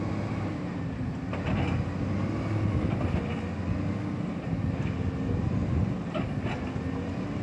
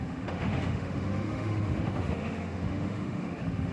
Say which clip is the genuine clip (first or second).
first